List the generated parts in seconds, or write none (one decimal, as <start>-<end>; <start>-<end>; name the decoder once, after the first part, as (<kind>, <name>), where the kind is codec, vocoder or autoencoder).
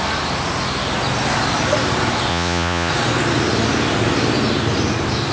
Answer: 2.3-2.9 (vocoder, Vocos)